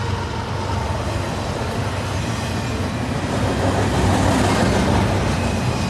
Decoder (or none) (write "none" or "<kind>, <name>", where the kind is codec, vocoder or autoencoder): none